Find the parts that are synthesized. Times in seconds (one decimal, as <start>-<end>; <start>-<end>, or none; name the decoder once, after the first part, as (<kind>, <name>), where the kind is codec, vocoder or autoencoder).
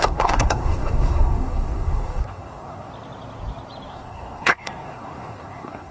0.0-2.9 (codec, SNAC); 3.9-5.9